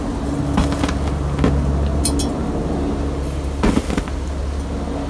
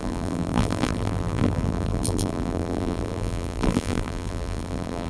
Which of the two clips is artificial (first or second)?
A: second